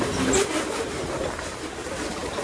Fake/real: real